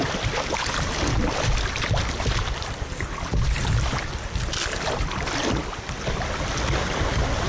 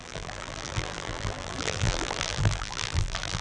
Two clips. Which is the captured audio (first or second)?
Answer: first